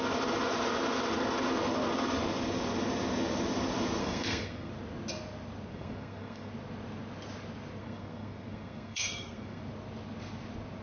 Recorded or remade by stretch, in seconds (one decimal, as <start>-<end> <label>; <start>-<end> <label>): 0.0-4.0 recorded; 4.0-4.7 remade; 4.7-5.7 recorded; 5.7-6.5 remade; 6.5-7.8 recorded; 7.8-9.6 remade; 9.6-10.8 recorded